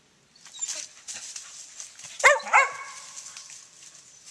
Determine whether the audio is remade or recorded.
recorded